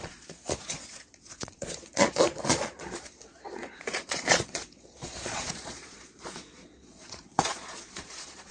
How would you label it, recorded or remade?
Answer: remade